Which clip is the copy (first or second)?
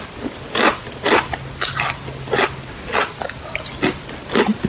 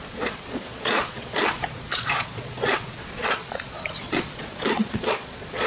second